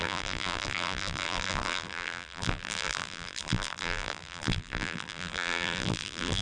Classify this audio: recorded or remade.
remade